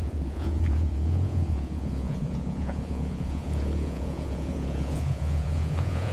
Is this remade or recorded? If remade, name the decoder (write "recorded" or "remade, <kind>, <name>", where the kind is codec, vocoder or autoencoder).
remade, vocoder, Vocos